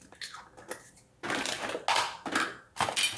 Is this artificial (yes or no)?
no